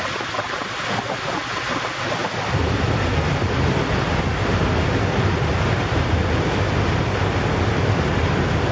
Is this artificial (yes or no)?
no